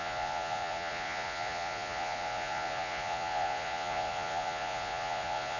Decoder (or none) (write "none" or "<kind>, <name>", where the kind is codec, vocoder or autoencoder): vocoder, Vocos